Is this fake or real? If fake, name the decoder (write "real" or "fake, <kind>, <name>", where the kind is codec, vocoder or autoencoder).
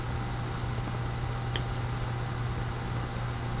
real